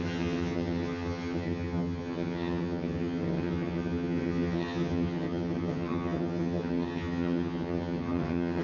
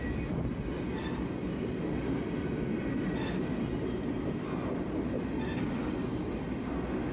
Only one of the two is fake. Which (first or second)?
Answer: first